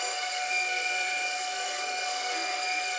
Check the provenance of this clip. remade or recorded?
remade